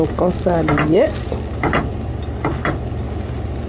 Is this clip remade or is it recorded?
recorded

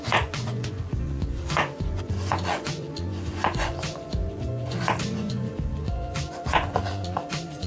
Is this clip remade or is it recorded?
remade